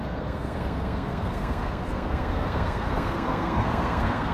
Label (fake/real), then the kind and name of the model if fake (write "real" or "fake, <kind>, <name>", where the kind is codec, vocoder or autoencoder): fake, codec, SNAC